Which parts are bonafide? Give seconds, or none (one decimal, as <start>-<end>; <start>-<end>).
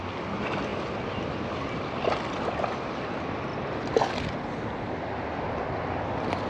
0.0-6.5